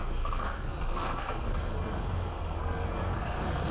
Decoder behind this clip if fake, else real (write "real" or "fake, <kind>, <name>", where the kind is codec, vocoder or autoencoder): fake, codec, SNAC